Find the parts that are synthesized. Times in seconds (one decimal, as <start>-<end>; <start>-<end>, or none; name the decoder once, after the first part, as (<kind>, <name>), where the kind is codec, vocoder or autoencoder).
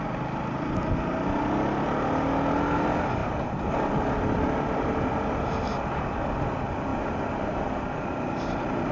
none